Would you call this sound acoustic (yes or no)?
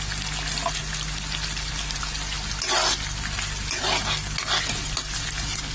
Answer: yes